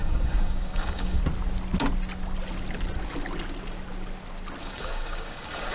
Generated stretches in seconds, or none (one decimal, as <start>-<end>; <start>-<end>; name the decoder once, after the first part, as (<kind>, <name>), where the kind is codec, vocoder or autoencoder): 0.0-1.2 (codec, DAC); 4.6-5.7